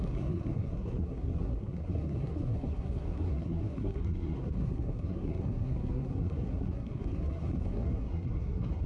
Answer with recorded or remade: remade